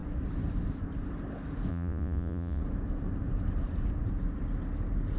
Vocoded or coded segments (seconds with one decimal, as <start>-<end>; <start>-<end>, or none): 1.7-2.6